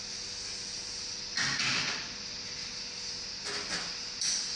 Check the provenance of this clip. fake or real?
real